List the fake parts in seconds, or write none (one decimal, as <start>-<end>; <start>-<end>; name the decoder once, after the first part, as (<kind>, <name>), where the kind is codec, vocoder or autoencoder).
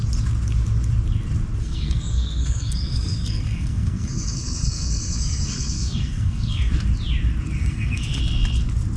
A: 1.6-6.7 (codec, SNAC); 7.6-8.2